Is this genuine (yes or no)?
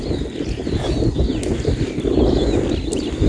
yes